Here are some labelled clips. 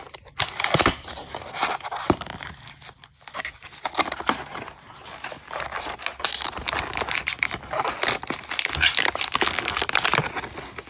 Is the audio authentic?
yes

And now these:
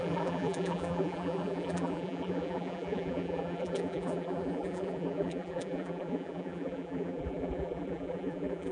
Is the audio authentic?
no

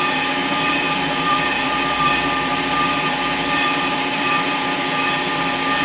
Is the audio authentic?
no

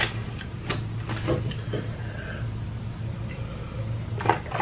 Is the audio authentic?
yes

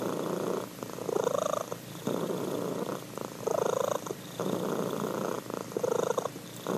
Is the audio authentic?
no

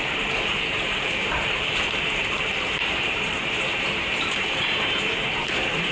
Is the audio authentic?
no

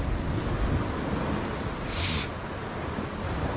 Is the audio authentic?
yes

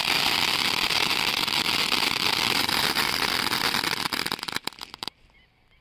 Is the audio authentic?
no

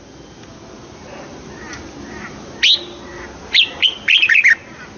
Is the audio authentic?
yes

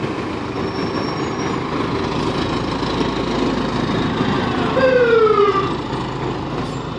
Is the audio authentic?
yes